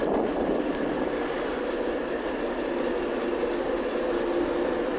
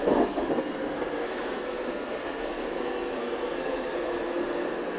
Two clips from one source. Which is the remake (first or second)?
second